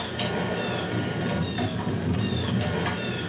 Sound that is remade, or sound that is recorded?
recorded